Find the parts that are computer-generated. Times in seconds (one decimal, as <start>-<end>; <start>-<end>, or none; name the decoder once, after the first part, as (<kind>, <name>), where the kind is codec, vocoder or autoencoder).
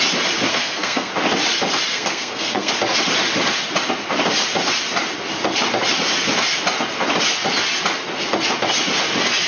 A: 0.5-1.1 (codec, SNAC); 1.9-2.7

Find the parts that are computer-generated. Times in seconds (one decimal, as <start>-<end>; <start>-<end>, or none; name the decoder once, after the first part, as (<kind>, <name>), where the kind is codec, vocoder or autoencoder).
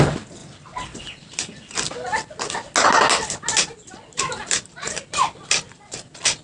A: none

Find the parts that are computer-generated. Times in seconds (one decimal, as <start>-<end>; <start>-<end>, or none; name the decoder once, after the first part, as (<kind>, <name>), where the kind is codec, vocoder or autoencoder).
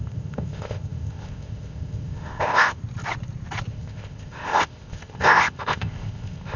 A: 0.0-2.8 (codec, ZipCodec); 3.7-6.6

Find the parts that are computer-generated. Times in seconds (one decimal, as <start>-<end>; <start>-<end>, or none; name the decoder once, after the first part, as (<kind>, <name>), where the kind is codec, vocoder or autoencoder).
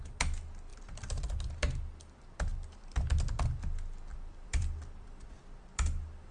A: 0.7-1.2 (vocoder, BigVGAN v2); 2.5-3.0; 4.1-6.3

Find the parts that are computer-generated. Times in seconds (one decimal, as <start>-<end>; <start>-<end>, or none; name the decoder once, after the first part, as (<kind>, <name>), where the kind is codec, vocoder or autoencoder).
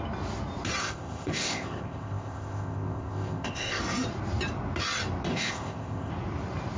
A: 0.8-3.8 (codec, ZipCodec); 5.3-6.1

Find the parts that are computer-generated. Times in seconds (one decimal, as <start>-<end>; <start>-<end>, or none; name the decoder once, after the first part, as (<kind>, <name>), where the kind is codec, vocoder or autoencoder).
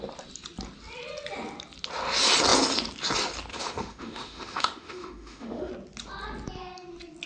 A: 3.5-5.7 (autoencoder, DAC-VAE)